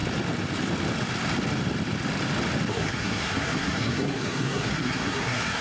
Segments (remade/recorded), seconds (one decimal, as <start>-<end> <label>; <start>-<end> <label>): 0.0-2.7 recorded; 2.7-5.6 remade